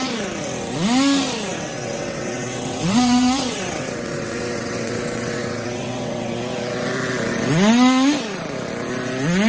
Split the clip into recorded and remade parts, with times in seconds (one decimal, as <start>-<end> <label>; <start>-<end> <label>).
0.0-1.5 recorded; 1.5-6.3 remade; 6.3-9.5 recorded